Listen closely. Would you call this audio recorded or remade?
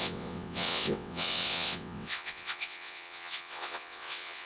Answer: remade